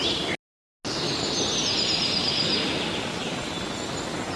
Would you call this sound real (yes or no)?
yes